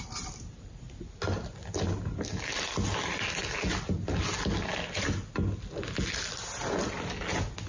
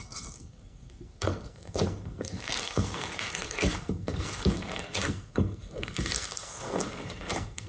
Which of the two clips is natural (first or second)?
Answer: first